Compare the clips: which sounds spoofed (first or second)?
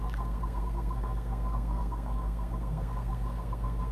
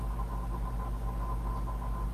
first